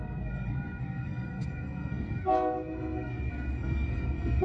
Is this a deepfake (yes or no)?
yes